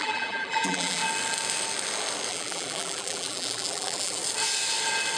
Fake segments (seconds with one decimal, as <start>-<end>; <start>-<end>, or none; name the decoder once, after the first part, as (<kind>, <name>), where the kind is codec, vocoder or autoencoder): 0.0-1.0 (vocoder, BigVGAN v2); 2.3-4.2